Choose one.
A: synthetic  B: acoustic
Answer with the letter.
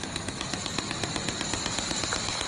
B